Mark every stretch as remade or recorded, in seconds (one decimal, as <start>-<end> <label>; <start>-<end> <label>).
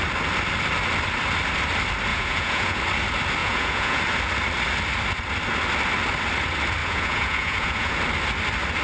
0.0-2.1 recorded; 2.1-2.8 remade; 2.8-3.4 recorded; 3.4-4.0 remade; 4.0-6.8 recorded; 6.8-8.0 remade; 8.0-8.8 recorded